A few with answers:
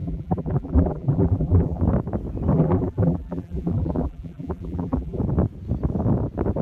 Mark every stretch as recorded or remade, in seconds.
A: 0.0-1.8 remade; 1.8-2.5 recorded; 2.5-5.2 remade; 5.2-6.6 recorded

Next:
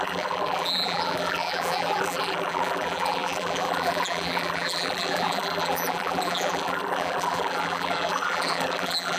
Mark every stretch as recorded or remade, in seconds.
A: 0.0-9.2 remade

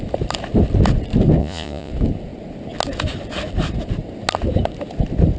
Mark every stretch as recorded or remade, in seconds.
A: 0.0-1.4 recorded; 1.4-1.9 remade; 1.9-5.4 recorded

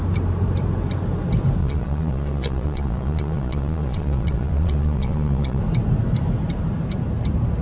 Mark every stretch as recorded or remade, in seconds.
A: 0.0-1.6 recorded; 1.6-5.6 remade; 5.6-7.6 recorded

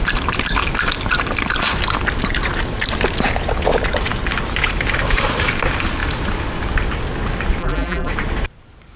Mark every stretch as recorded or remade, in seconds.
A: 0.0-7.6 recorded; 7.6-8.1 remade; 8.1-9.0 recorded

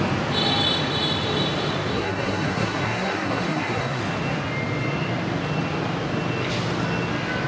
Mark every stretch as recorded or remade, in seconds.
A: 0.0-1.9 recorded; 1.9-4.0 remade; 4.0-7.5 recorded

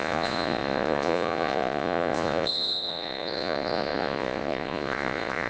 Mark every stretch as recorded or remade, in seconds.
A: 0.0-5.5 remade